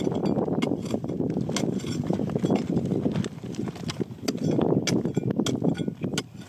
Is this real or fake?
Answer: real